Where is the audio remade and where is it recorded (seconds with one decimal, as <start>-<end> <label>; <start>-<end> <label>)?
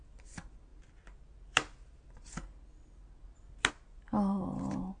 0.0-5.0 recorded